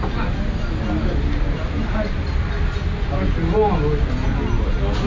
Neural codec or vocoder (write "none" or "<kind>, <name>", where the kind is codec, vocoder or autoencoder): none